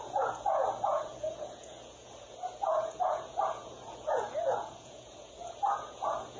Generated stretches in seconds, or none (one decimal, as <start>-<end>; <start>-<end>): 0.0-6.4